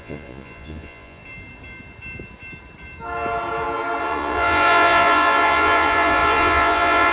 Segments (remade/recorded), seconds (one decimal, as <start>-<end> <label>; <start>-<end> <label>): 0.0-1.2 remade; 1.2-4.0 recorded; 4.0-7.1 remade